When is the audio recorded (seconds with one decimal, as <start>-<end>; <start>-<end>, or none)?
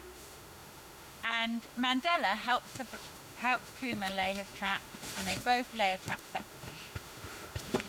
none